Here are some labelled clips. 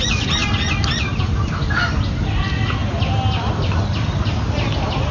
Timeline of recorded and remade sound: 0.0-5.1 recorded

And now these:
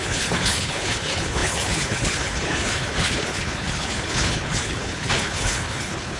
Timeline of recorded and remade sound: 0.0-6.2 remade

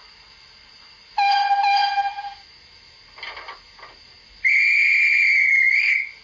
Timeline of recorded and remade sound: 0.0-6.2 recorded

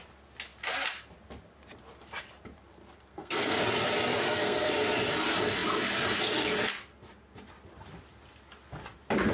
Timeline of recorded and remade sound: 0.0-3.1 recorded; 3.1-3.6 remade; 3.6-4.1 recorded; 4.1-4.7 remade; 4.7-9.3 recorded

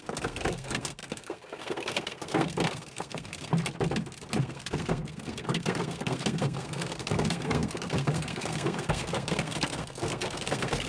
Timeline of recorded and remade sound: 0.0-3.5 remade; 3.5-4.4 recorded; 4.4-10.9 remade